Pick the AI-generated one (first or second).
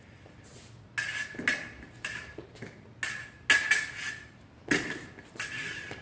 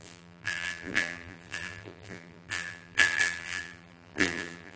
second